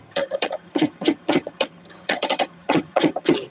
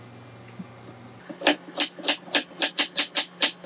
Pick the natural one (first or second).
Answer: second